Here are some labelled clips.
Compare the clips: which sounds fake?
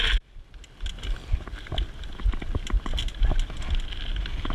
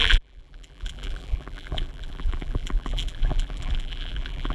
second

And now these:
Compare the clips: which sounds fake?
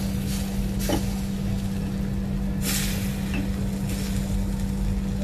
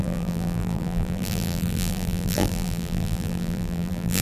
second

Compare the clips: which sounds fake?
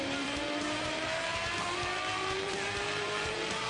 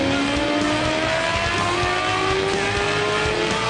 first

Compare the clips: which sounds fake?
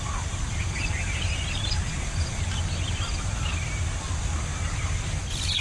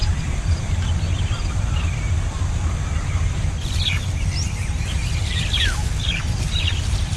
second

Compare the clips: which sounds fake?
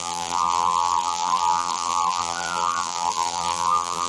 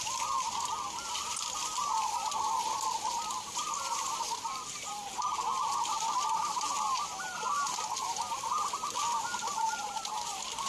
first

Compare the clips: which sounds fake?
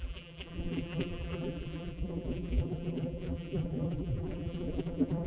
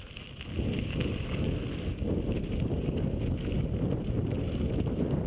first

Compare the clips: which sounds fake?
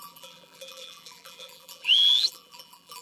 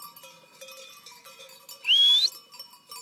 first